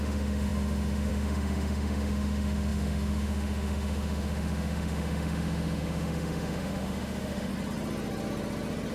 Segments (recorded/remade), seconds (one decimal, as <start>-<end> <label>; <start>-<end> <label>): 0.0-7.5 remade; 7.5-8.9 recorded